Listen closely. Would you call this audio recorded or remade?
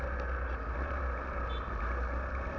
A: recorded